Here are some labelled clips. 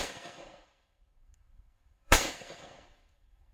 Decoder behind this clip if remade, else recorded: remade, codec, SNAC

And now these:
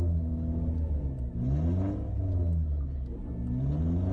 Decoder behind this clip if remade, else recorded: recorded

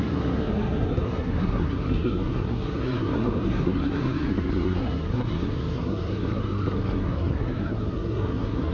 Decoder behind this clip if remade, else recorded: remade, codec, SNAC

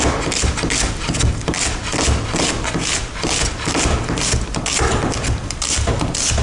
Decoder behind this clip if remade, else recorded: recorded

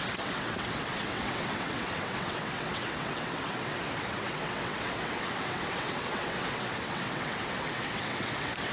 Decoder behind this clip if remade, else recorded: remade, vocoder, WaveNeXt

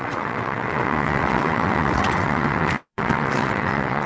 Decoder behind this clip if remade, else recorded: remade, vocoder, WaveNeXt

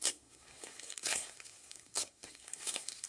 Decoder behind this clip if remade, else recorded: remade, codec, SNAC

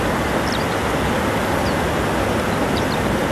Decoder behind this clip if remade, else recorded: recorded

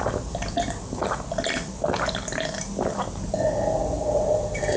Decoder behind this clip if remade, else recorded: recorded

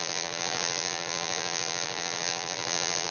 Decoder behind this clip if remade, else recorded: remade, vocoder, BigVGAN v2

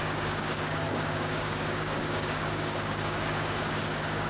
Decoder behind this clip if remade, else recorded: remade, codec, DAC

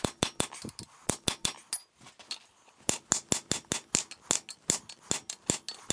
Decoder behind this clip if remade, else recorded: recorded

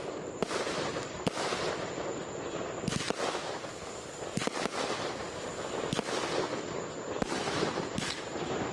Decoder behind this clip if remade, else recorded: recorded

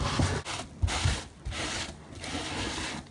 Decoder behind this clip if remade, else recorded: recorded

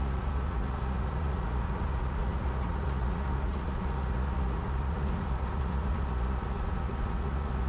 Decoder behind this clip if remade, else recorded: remade, vocoder, Vocos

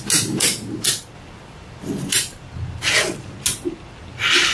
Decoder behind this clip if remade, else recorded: recorded